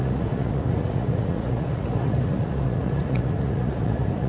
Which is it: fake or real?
fake